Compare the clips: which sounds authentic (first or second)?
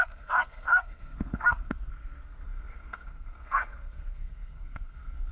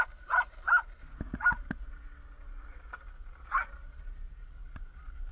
second